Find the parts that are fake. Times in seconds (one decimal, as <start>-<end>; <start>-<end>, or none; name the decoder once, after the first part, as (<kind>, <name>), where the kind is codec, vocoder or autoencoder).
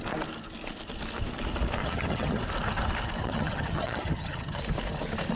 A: 1.8-2.4 (vocoder, HiFi-GAN); 3.2-4.6